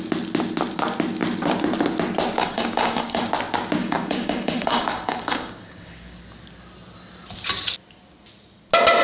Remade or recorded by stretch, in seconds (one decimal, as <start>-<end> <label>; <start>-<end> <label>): 0.0-2.4 recorded; 2.4-3.3 remade; 3.3-3.8 recorded; 3.8-6.2 remade; 6.2-9.0 recorded